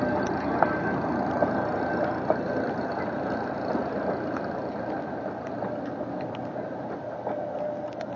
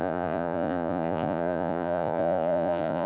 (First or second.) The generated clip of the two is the second